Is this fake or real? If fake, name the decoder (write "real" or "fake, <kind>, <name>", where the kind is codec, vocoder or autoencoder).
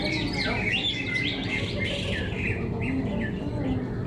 real